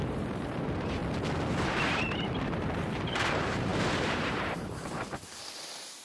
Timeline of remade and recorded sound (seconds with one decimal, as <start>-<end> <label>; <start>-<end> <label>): 0.0-1.0 remade; 1.0-1.5 recorded; 1.5-6.0 remade